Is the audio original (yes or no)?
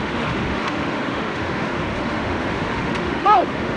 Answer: no